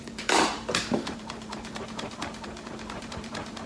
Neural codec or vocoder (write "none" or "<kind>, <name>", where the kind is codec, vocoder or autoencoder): vocoder, BigVGAN v2